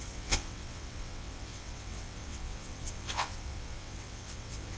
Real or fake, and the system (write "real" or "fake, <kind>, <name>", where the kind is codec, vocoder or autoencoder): fake, vocoder, WaveNeXt